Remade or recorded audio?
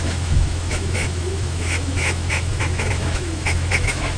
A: remade